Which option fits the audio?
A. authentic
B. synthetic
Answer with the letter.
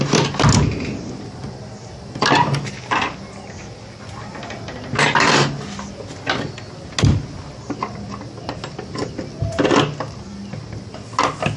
A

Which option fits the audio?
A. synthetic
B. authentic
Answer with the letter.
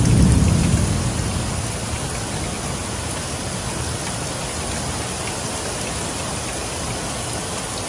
B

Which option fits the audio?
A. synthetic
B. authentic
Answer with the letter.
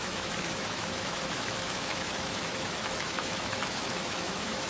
A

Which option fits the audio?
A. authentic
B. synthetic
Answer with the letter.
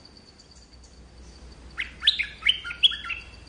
A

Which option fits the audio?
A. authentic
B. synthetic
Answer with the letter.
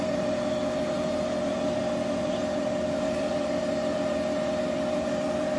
B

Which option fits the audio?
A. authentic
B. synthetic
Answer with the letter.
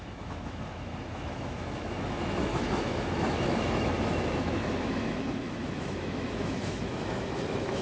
B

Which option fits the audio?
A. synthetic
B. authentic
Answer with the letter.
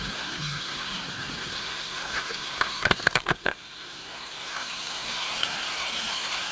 A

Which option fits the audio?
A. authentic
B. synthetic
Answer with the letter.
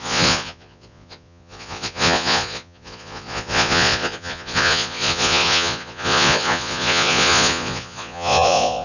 B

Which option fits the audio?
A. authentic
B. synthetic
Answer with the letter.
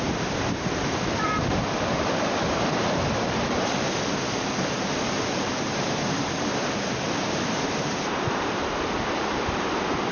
B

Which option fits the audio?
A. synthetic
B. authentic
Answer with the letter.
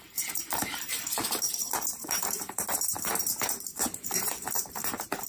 A